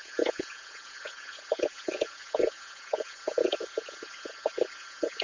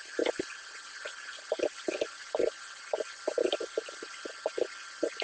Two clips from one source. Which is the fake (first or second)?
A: first